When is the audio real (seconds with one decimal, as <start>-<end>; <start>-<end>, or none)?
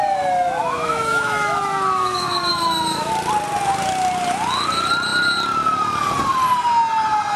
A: 0.0-0.6; 3.1-7.4